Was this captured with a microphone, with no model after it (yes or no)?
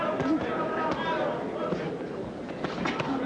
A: yes